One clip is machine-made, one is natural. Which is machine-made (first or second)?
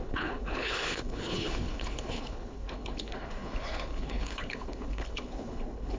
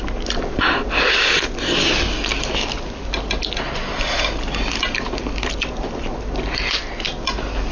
first